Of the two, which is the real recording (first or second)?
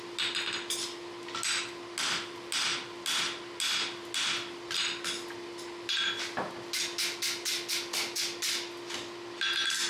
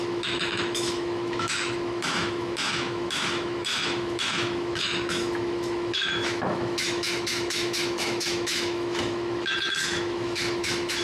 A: first